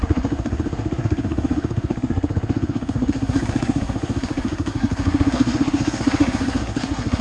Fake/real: fake